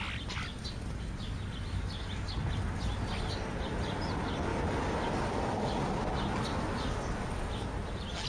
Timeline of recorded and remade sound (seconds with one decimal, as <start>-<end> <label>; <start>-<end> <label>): 0.0-4.5 recorded; 4.5-5.9 remade; 5.9-8.3 recorded

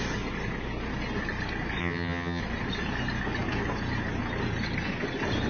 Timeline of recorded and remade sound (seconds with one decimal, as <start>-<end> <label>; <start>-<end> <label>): 0.0-1.8 recorded; 1.8-2.4 remade; 2.4-5.5 recorded

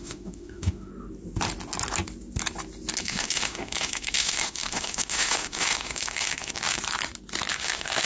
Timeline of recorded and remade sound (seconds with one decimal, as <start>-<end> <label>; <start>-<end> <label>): 0.0-0.9 remade; 0.9-3.0 recorded; 3.0-6.8 remade; 6.8-7.5 recorded; 7.5-8.1 remade

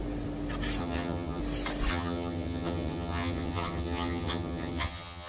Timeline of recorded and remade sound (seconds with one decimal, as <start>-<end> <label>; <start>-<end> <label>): 0.0-0.8 recorded; 0.8-1.4 remade; 1.4-1.9 recorded; 1.9-5.3 remade